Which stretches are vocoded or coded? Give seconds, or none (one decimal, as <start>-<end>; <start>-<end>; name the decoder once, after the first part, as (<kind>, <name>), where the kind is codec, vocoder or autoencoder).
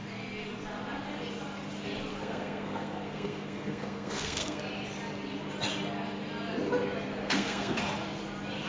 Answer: 2.1-4.6 (codec, SNAC); 7.2-7.8